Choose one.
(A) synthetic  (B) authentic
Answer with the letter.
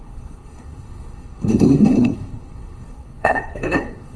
A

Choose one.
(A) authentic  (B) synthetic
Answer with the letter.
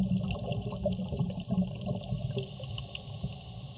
A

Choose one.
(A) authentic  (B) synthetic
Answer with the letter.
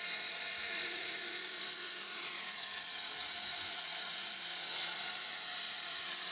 B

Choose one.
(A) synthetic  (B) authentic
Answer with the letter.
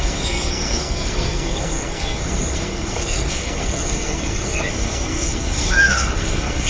A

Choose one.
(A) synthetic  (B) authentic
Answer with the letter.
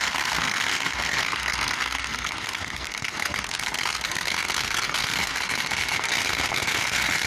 A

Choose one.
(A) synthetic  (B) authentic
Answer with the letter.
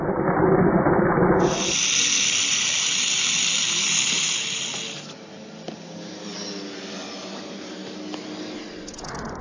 B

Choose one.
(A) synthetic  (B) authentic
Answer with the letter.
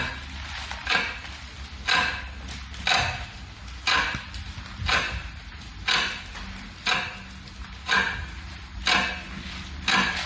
B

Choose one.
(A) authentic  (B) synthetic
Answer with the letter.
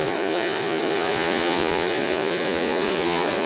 B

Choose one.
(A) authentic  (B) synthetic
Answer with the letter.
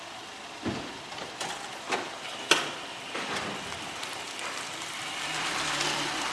B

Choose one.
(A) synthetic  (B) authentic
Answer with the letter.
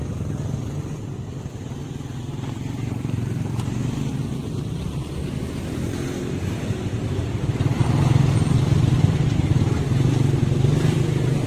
A